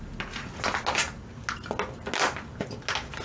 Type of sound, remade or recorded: recorded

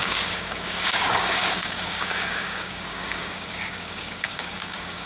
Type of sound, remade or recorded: remade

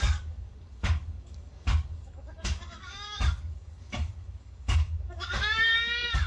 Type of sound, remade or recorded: remade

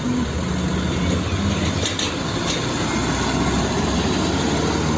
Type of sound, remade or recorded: recorded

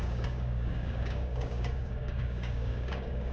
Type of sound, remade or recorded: remade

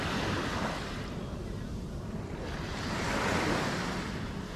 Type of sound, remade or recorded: recorded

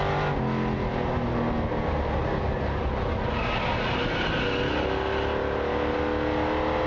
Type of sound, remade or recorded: recorded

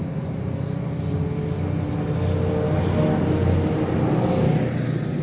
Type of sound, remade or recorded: recorded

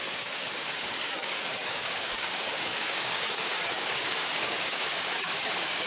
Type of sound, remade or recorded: remade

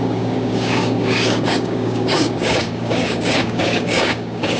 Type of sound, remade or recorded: remade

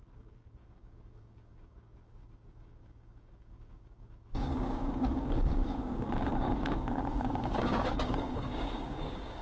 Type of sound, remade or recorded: remade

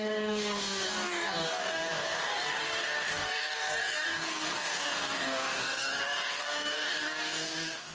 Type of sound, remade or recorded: remade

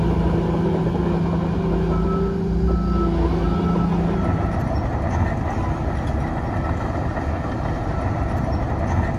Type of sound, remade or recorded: recorded